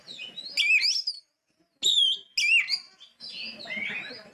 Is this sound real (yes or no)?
yes